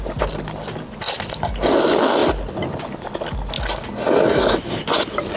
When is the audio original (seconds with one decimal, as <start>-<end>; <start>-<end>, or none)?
0.0-5.4